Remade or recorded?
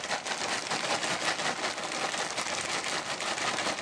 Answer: recorded